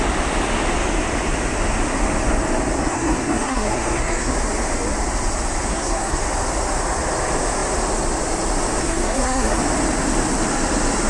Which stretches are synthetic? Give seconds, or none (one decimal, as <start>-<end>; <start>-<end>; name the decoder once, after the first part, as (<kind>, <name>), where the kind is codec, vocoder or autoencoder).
2.8-4.3 (codec, SNAC); 5.7-6.2; 8.8-9.6